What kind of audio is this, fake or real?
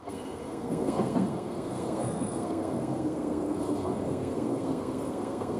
fake